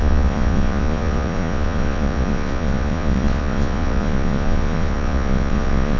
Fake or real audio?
fake